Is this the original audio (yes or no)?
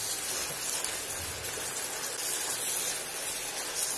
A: yes